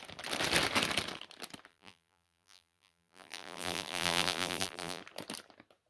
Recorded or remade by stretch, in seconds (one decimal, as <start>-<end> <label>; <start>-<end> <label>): 0.0-1.7 recorded; 1.7-5.0 remade; 5.0-5.9 recorded